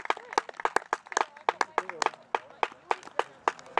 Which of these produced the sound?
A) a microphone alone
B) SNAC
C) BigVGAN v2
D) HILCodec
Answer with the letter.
A